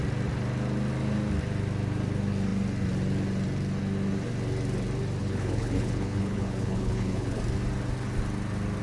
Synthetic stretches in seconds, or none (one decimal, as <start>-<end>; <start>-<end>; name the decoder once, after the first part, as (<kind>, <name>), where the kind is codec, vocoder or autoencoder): 5.2-7.4 (codec, HILCodec)